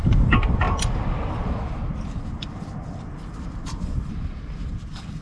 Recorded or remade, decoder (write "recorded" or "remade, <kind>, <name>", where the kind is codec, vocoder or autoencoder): remade, vocoder, BigVGAN v2